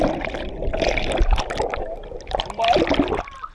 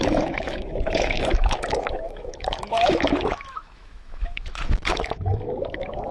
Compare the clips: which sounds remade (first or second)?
second